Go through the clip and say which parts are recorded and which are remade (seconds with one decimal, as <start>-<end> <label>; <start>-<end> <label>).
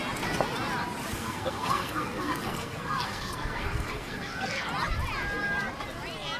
0.0-1.1 recorded; 1.1-4.7 remade; 4.7-6.4 recorded